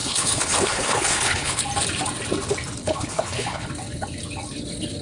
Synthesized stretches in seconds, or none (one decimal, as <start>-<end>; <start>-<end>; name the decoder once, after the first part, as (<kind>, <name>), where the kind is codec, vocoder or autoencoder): 0.0-1.6 (codec, HILCodec); 2.8-3.7